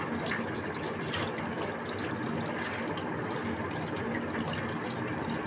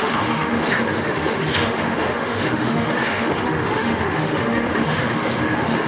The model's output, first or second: second